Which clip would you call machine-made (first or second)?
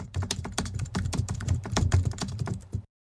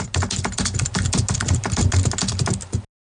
first